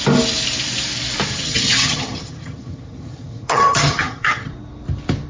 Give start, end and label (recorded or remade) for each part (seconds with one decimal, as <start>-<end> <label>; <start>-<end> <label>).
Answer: 0.0-1.3 recorded; 1.3-4.5 remade; 4.5-5.3 recorded